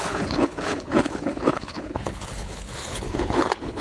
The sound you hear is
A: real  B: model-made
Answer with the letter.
B